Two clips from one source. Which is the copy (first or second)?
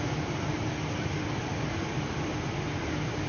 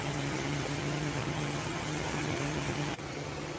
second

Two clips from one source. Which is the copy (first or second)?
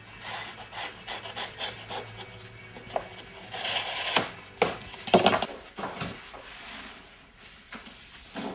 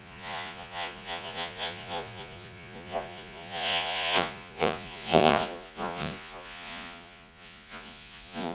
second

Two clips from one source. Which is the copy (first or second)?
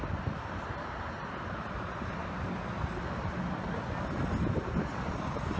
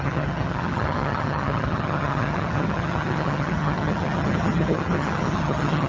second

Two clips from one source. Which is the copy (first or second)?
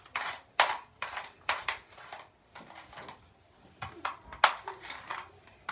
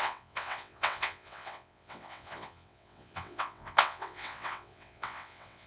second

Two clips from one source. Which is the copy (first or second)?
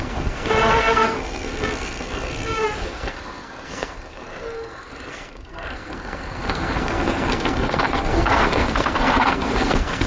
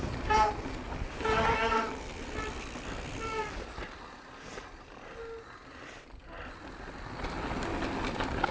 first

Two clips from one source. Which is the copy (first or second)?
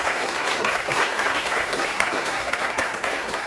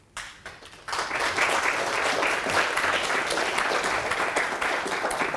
first